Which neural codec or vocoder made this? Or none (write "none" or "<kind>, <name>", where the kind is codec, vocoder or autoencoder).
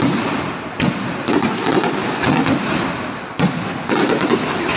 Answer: none